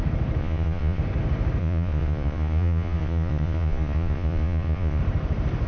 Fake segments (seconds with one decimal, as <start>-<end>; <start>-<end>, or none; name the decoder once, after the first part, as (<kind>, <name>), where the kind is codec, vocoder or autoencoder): 0.4-1.0 (vocoder, Vocos); 1.6-5.0